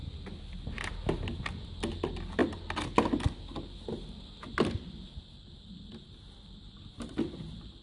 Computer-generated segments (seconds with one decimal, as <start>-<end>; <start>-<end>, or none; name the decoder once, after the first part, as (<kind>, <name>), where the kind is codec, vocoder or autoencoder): none